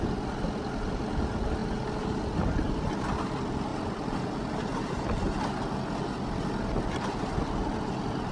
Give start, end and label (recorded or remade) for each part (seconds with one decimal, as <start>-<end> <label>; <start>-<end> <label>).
0.0-8.3 recorded